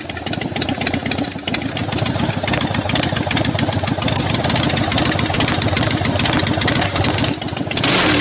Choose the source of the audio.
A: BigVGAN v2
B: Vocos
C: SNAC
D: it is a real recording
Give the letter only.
D